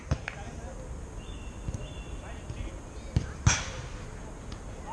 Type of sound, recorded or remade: recorded